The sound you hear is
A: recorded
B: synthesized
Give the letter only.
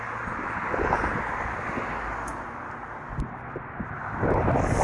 A